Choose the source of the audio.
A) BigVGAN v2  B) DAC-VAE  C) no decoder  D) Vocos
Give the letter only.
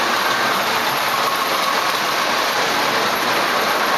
C